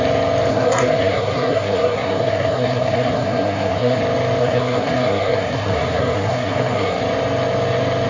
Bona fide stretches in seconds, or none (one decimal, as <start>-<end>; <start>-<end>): 0.0-0.5; 4.0-4.4; 7.0-8.1